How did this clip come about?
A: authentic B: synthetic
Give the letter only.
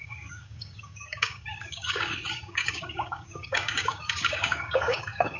B